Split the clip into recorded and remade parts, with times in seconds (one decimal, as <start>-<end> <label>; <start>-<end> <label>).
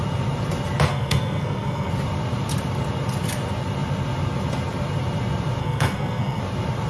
0.0-0.9 recorded; 0.9-1.9 remade; 1.9-5.6 recorded; 5.6-6.4 remade; 6.4-6.9 recorded